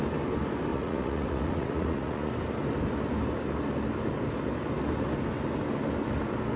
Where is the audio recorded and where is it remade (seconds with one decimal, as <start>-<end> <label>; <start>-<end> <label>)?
0.0-0.7 recorded; 0.7-2.3 remade; 2.3-6.6 recorded